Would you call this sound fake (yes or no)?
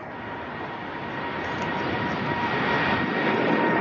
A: no